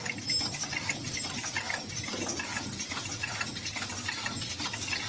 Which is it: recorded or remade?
recorded